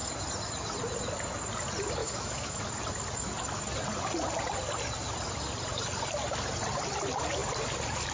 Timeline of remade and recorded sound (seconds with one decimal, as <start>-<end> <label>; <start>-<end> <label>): 0.0-2.0 recorded; 2.0-2.6 remade; 2.6-8.1 recorded